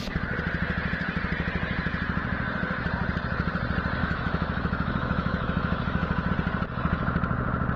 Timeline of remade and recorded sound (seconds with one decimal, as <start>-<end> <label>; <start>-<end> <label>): 0.0-4.0 recorded; 4.0-6.3 remade; 6.3-7.8 recorded